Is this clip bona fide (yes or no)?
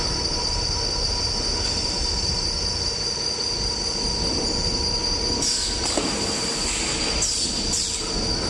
yes